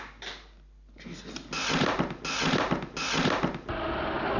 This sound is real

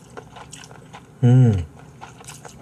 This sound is real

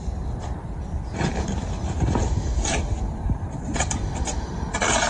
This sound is real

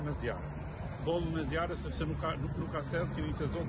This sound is real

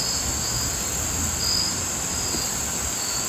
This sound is real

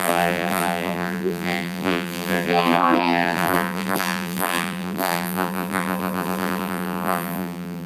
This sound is fake